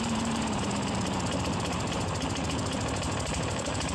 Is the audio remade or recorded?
remade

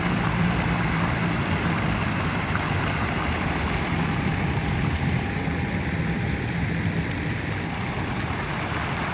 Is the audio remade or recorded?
remade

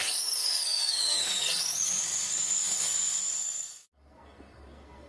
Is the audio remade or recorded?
remade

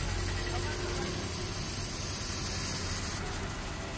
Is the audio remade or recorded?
recorded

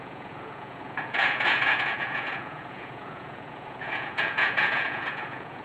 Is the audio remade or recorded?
remade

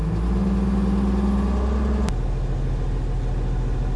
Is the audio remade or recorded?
recorded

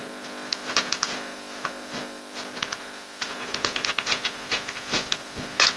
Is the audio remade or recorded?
recorded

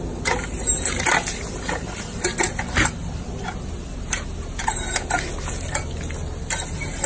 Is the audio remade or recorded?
recorded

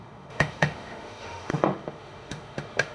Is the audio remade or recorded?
remade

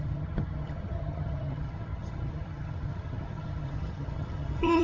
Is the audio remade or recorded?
remade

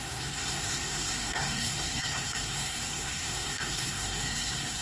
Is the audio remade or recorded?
remade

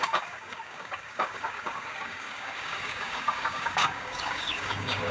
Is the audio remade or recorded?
remade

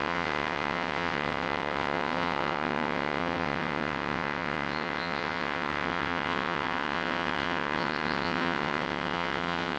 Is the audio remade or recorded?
remade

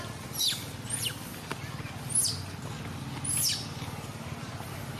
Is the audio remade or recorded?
recorded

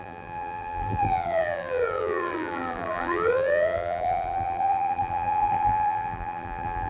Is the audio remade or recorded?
remade